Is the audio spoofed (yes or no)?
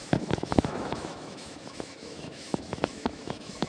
yes